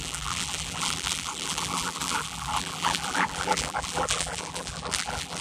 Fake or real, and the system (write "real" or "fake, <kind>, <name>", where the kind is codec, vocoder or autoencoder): fake, vocoder, BigVGAN v2